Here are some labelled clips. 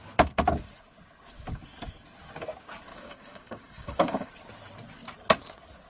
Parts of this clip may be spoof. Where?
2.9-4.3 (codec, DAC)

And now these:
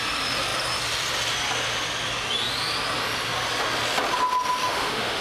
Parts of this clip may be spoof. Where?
4.6-5.2 (autoencoder, DAC-VAE)

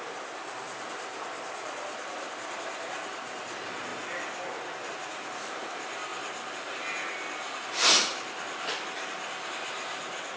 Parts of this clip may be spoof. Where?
none